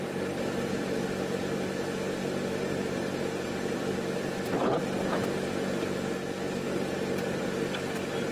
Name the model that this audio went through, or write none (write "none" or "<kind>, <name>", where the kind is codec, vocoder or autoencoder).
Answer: none